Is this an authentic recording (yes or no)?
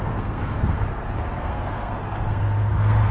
no